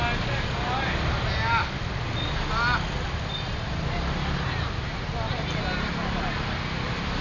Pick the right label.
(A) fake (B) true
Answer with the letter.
B